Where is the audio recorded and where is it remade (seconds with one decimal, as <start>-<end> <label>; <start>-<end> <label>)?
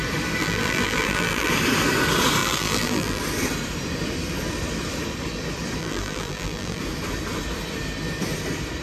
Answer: 0.0-0.4 recorded; 0.4-1.5 remade; 1.5-2.4 recorded; 2.4-3.2 remade; 3.2-5.8 recorded; 5.8-6.8 remade; 6.8-8.8 recorded